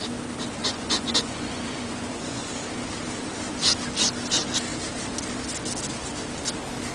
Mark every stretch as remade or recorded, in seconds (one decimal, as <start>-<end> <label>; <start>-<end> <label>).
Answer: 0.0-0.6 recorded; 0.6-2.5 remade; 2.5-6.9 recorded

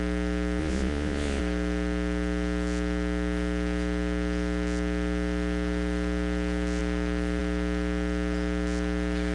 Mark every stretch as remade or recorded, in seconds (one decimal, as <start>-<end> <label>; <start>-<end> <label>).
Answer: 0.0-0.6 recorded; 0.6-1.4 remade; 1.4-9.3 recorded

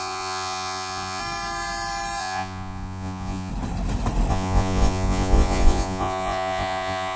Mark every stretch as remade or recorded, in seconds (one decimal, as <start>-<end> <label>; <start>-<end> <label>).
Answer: 0.0-1.2 remade; 1.2-2.2 recorded; 2.2-3.5 remade; 3.5-4.3 recorded; 4.3-7.2 remade

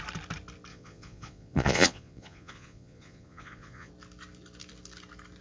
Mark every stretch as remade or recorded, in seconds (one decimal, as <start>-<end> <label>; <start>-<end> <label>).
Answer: 0.0-0.7 recorded; 0.7-3.9 remade; 3.9-5.4 recorded